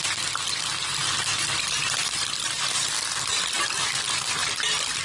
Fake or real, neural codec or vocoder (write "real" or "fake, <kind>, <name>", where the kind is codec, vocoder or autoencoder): fake, vocoder, BigVGAN v2